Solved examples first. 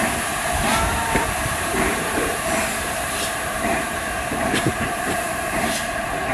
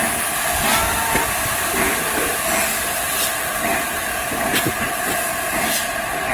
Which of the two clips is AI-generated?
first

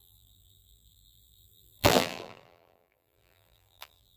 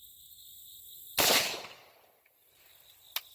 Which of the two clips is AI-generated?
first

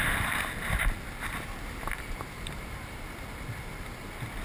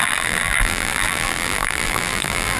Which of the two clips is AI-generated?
second